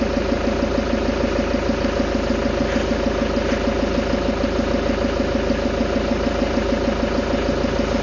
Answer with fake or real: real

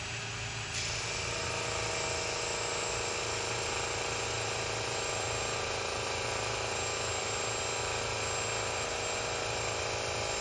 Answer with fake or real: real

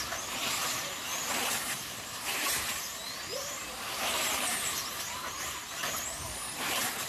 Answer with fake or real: fake